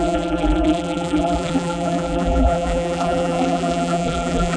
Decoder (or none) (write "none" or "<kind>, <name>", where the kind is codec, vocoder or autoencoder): vocoder, BigVGAN v2